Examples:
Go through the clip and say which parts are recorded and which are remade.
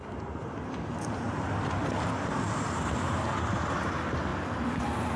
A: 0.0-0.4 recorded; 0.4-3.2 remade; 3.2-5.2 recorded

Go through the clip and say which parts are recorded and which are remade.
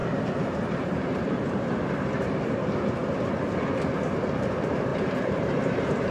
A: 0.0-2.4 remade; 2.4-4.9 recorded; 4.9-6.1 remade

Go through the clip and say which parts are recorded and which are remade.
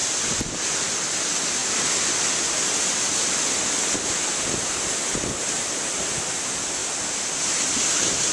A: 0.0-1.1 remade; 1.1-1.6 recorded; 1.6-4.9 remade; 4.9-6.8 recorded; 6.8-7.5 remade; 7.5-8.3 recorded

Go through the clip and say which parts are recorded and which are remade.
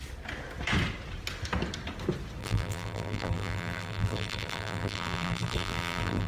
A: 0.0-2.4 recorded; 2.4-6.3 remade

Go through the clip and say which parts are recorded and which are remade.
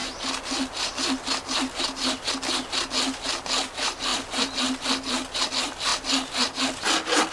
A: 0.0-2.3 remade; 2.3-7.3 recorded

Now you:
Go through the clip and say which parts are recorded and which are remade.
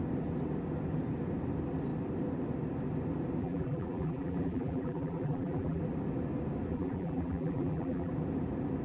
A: 0.0-3.4 recorded; 3.4-5.8 remade; 5.8-6.7 recorded; 6.7-8.1 remade; 8.1-8.8 recorded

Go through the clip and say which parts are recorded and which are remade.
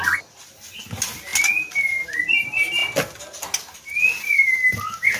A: 0.0-5.2 recorded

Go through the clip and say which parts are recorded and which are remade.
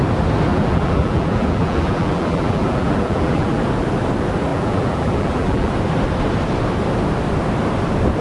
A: 0.0-0.5 recorded; 0.5-3.6 remade; 3.6-4.5 recorded; 4.5-5.7 remade; 5.7-8.2 recorded